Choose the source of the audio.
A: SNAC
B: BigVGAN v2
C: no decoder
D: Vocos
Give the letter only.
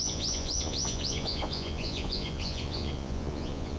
D